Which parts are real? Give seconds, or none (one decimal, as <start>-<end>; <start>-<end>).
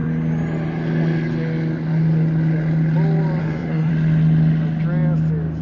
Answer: 0.0-3.4; 3.9-5.6